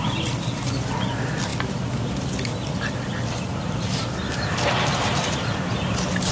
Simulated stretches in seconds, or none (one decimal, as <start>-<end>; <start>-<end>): none